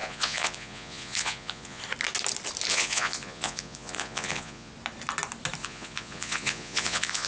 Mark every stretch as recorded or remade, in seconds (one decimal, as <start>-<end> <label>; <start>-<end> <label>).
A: 0.0-1.8 remade; 1.8-2.7 recorded; 2.7-4.7 remade; 4.7-5.6 recorded; 5.6-7.3 remade